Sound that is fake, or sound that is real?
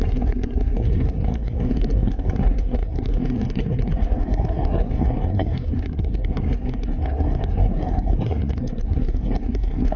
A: fake